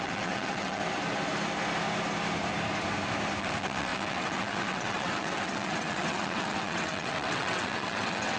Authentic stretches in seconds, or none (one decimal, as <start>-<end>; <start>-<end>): 0.8-3.4